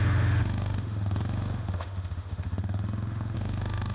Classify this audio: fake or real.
fake